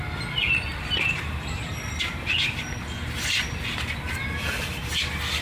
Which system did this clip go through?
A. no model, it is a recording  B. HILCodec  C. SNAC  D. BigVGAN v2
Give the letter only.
A